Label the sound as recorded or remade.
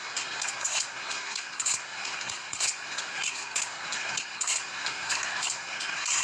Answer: remade